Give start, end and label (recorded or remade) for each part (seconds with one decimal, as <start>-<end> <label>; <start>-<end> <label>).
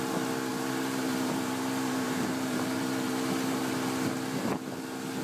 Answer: 0.0-0.5 recorded; 0.5-3.6 remade; 3.6-5.2 recorded